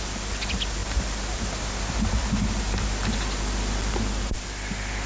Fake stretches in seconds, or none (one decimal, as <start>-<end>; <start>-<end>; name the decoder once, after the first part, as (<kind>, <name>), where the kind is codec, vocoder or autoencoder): none

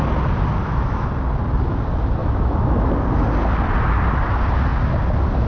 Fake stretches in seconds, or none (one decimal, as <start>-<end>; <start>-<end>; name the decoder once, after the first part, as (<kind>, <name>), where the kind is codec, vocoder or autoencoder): 0.6-1.1 (autoencoder, DAC-VAE); 2.2-2.9